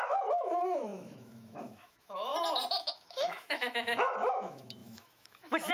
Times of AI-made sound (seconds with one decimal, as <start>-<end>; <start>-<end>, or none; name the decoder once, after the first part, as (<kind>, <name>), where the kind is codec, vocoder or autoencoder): 0.0-2.3 (autoencoder, DAC-VAE); 2.8-5.7